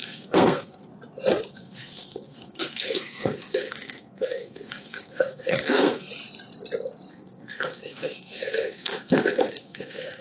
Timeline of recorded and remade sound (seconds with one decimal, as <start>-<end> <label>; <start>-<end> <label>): 0.0-0.9 remade; 0.9-1.5 recorded; 1.5-6.1 remade; 6.1-7.1 recorded; 7.1-10.2 remade